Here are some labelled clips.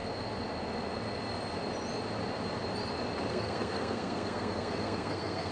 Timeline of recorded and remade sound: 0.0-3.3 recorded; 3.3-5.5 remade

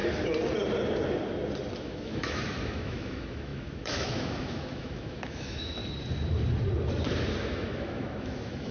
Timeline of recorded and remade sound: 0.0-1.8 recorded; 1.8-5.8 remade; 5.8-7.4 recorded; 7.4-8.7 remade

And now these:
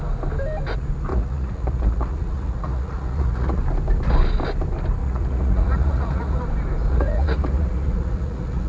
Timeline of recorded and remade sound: 0.0-1.1 recorded; 1.1-3.6 remade; 3.6-5.0 recorded; 5.0-6.4 remade; 6.4-6.9 recorded; 6.9-8.7 remade